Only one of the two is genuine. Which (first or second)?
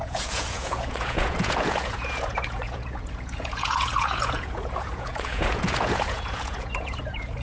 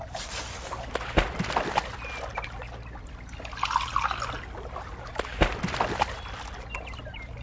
second